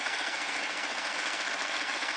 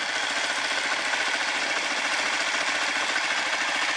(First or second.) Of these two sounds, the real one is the second